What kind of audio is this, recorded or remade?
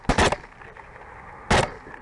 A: recorded